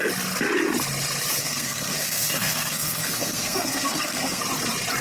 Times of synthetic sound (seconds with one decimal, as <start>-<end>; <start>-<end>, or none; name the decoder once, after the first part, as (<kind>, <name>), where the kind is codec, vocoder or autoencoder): 1.4-4.4 (codec, SNAC)